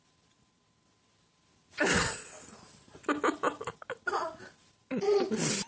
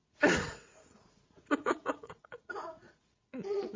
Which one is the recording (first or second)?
first